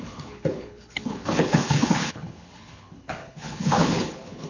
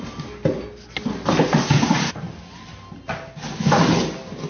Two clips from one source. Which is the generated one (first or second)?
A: first